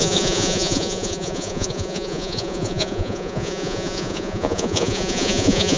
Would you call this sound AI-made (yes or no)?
yes